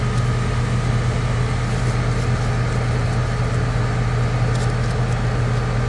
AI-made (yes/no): no